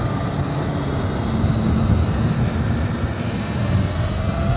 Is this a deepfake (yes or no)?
no